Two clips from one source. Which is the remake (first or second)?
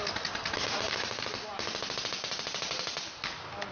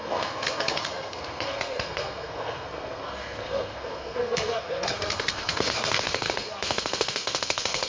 second